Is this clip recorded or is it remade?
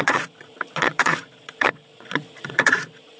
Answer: remade